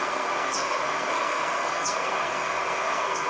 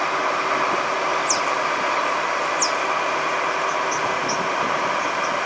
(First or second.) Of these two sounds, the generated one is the first